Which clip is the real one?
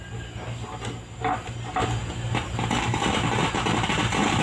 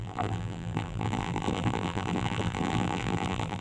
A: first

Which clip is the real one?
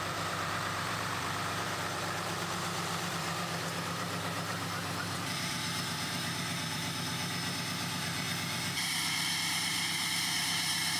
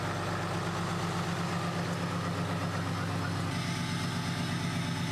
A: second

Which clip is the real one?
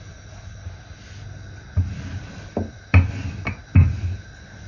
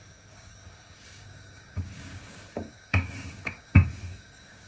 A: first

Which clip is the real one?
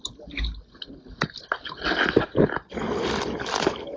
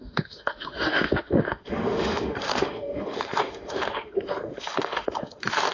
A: first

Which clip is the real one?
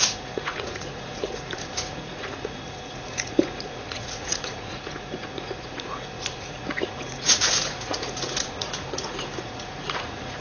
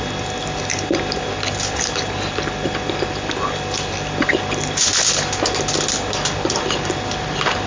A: second